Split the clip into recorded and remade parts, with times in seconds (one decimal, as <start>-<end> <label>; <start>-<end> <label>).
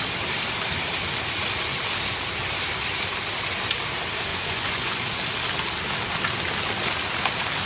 0.0-4.3 recorded; 4.3-5.0 remade; 5.0-7.7 recorded